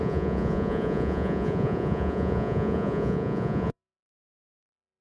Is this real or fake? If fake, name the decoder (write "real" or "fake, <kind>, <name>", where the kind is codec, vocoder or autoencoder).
fake, vocoder, Vocos